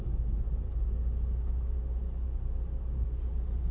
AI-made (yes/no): no